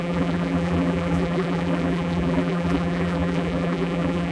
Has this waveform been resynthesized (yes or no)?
yes